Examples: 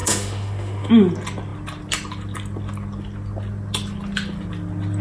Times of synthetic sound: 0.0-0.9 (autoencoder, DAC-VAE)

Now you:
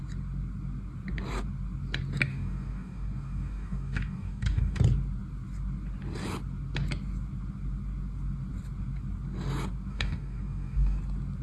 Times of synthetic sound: 2.3-4.8 (codec, DAC); 9.9-11.0

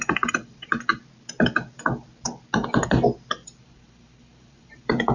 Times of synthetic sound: 0.0-0.9 (vocoder, BigVGAN v2); 3.6-5.1

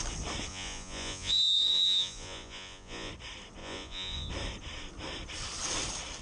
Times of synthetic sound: 0.5-3.1 (vocoder, Vocos); 3.6-4.3

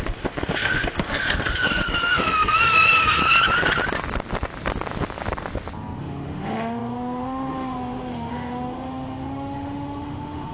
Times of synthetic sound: 0.0-3.2 (autoencoder, DAC-VAE); 6.0-10.5

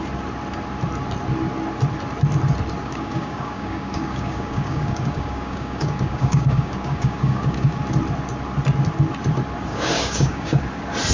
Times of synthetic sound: 2.8-7.8 (codec, DAC); 9.7-10.6

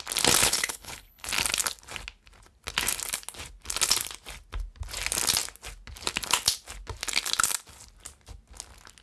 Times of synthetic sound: 0.4-1.3 (codec, HILCodec)

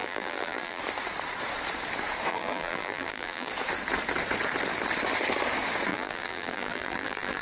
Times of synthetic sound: 0.0-0.8 (vocoder, BigVGAN v2); 2.3-3.5; 5.9-7.4